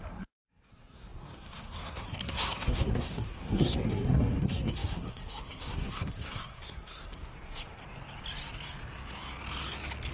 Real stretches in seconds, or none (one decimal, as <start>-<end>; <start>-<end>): 7.8-10.1

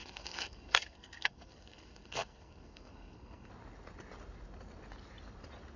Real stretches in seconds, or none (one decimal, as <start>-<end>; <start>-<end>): 3.5-5.8

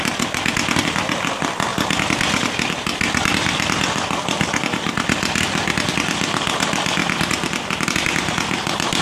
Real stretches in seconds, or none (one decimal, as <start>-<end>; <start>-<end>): 0.0-9.0

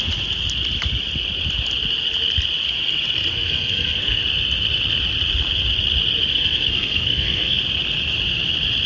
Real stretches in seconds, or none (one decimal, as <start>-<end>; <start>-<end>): 0.0-3.3; 4.2-6.3; 7.6-8.9

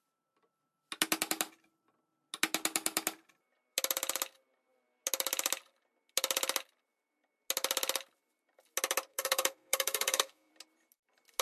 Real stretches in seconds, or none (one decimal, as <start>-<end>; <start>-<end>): 0.0-9.1; 10.5-11.4